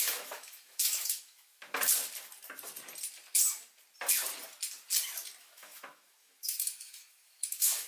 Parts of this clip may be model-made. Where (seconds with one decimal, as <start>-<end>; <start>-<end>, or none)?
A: 0.0-1.6; 5.4-7.9